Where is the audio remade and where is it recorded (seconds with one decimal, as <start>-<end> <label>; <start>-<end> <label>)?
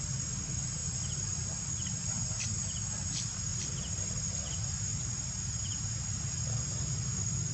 0.0-3.5 recorded; 3.5-4.2 remade; 4.2-7.5 recorded